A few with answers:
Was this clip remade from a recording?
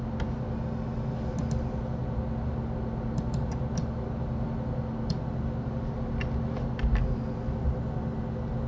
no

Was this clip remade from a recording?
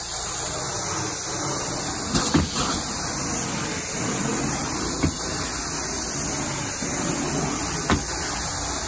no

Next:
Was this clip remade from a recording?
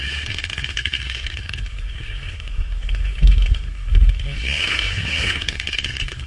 yes